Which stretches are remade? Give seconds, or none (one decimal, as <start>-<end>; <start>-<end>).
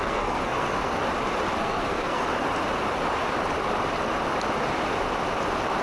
0.0-1.0; 1.6-2.2